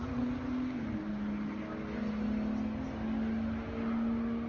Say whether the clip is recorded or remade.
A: recorded